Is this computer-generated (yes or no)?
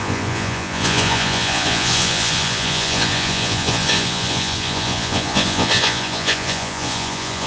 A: yes